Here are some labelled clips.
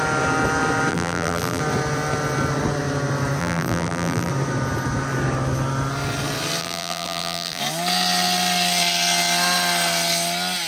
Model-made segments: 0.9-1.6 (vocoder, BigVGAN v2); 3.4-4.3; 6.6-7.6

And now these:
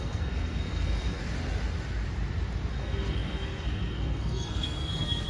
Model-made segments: 0.0-1.2 (codec, SNAC); 2.7-5.3

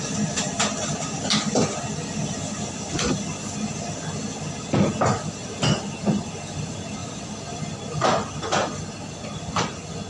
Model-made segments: none

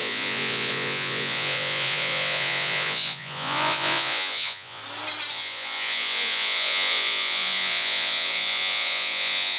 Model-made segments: 0.0-4.8 (vocoder, Vocos); 5.3-9.6

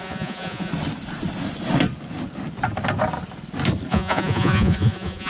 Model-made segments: 0.0-0.7 (vocoder, Vocos); 3.9-5.3